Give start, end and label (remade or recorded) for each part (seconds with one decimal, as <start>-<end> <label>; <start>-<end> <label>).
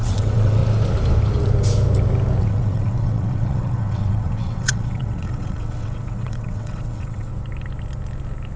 0.0-0.6 remade; 0.6-2.4 recorded; 2.4-7.3 remade; 7.3-8.6 recorded